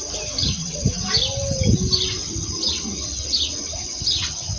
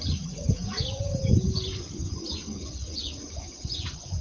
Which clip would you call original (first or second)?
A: first